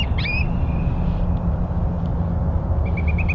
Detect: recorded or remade recorded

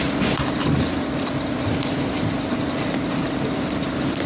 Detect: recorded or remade recorded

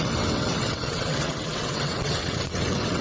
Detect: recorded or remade remade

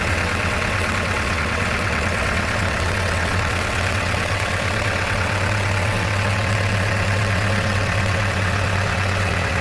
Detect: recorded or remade remade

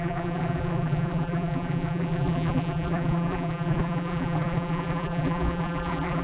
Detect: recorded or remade remade